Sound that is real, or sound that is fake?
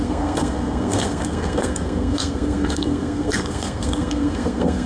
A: fake